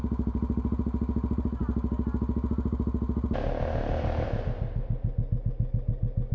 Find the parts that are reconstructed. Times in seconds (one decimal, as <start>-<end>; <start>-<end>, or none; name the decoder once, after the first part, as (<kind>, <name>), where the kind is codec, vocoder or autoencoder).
none